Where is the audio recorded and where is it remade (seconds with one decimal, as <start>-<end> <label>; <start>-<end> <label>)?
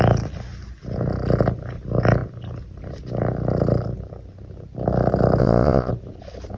0.0-5.4 recorded; 5.4-5.9 remade; 5.9-6.6 recorded